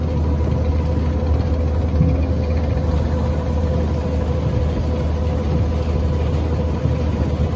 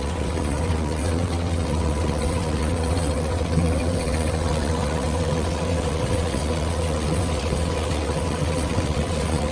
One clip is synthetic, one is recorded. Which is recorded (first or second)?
first